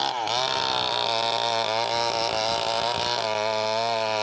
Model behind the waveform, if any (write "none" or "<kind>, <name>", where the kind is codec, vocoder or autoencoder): none